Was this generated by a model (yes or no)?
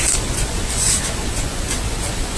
yes